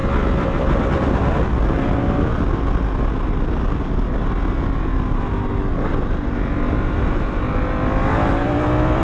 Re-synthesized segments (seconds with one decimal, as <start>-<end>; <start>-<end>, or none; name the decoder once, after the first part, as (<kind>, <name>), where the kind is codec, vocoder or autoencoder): none